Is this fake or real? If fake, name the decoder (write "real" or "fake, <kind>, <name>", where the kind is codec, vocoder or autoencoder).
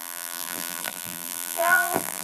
fake, vocoder, BigVGAN v2